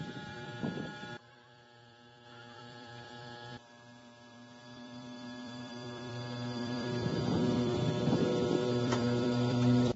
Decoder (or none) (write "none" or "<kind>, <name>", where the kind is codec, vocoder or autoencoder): vocoder, BigVGAN v2